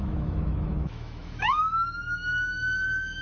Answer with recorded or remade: remade